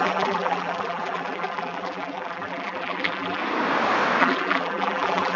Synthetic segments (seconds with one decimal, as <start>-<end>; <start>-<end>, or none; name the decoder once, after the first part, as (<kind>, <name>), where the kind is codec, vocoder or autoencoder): 0.0-3.4 (vocoder, BigVGAN v2); 4.2-5.4

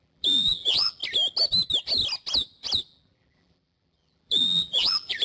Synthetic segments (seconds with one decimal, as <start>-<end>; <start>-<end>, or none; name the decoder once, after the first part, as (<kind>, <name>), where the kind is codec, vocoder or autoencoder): 0.0-1.0 (vocoder, BigVGAN v2); 2.9-5.2

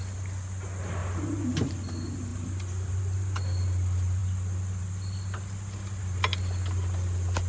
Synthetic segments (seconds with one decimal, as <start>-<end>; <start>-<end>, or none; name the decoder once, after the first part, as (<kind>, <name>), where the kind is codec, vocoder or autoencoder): 1.0-1.7 (vocoder, BigVGAN v2)

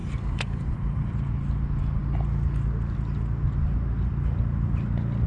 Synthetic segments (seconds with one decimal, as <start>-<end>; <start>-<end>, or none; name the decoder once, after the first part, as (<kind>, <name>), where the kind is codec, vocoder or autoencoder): 0.0-1.3 (vocoder, BigVGAN v2)

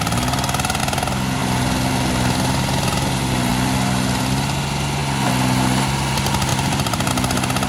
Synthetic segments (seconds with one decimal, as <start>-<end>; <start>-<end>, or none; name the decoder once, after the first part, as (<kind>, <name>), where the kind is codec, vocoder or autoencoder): 6.5-7.1 (vocoder, BigVGAN v2)

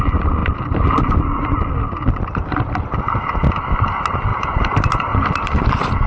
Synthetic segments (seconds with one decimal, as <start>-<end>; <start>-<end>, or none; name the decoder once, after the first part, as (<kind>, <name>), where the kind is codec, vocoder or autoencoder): 0.4-3.0 (vocoder, BigVGAN v2); 4.3-6.1

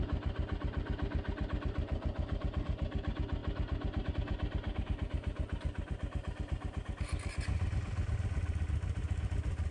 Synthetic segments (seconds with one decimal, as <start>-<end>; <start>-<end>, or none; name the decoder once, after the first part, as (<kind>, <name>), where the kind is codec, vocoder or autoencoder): none